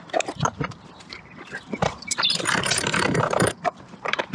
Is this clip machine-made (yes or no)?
yes